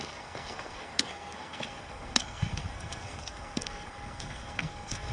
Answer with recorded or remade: remade